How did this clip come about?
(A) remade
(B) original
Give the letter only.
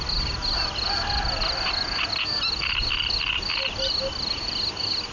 B